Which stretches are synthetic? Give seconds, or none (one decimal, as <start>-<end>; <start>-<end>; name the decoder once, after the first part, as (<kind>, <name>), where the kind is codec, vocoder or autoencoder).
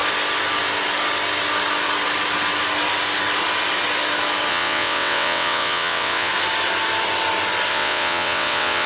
4.5-6.3 (vocoder, WaveNeXt); 7.7-8.9